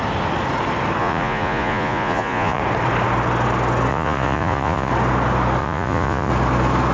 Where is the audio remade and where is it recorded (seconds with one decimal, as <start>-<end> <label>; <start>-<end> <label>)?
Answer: 0.0-1.0 recorded; 1.0-2.6 remade; 2.6-3.9 recorded; 3.9-4.9 remade; 4.9-5.6 recorded; 5.6-6.3 remade; 6.3-6.9 recorded

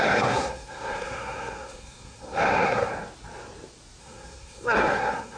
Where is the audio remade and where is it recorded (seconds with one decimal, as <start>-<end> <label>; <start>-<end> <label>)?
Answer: 0.0-2.9 remade; 2.9-4.0 recorded; 4.0-5.4 remade

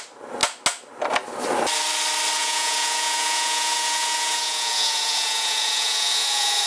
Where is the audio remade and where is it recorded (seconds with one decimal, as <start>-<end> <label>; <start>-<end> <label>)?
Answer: 0.0-2.4 recorded; 2.4-6.7 remade